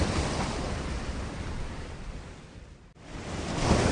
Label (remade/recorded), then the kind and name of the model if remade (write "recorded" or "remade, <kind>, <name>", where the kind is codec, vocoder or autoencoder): remade, vocoder, BigVGAN v2